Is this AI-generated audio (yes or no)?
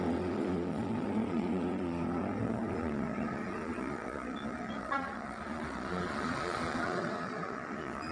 yes